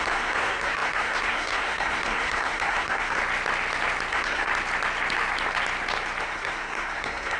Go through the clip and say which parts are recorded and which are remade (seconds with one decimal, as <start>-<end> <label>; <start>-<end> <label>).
0.0-3.2 remade; 3.2-4.1 recorded; 4.1-4.5 remade; 4.5-6.2 recorded; 6.2-7.4 remade